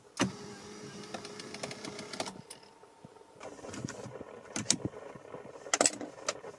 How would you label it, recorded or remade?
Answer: recorded